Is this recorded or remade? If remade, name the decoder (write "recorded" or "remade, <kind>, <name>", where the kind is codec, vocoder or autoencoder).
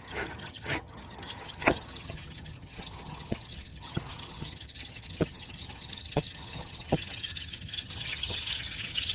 remade, vocoder, HiFi-GAN